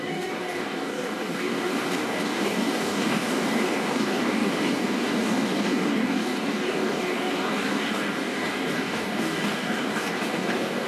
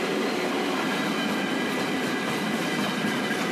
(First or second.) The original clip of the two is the second